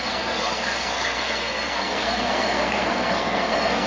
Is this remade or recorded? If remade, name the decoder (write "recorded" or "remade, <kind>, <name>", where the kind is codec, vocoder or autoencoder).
remade, codec, SNAC